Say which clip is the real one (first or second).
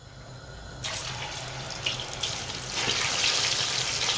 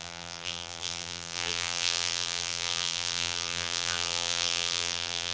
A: first